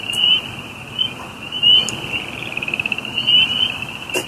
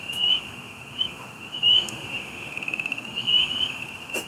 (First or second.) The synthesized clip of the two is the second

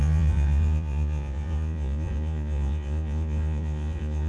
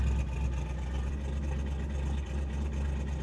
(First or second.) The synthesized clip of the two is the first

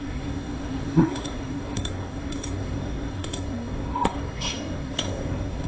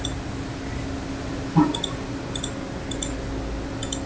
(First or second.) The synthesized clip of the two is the first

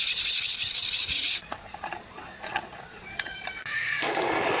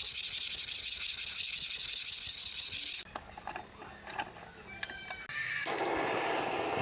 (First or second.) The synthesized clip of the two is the first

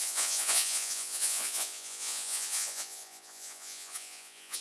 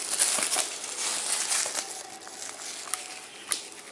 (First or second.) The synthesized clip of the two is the first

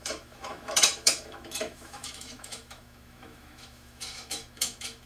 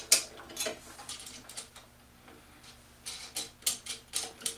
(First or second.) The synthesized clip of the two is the first